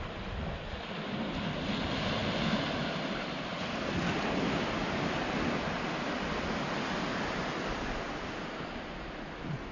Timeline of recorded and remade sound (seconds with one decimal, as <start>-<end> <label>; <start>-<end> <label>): 0.0-9.7 recorded